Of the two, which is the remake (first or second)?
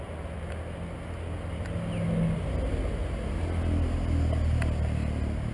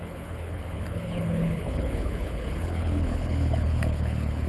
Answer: second